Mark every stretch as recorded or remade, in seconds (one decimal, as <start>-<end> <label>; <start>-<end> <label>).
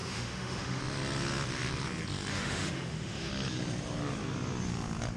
0.0-0.8 remade; 0.8-2.3 recorded; 2.3-3.3 remade; 3.3-5.2 recorded